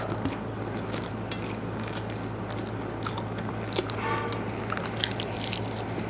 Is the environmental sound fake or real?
real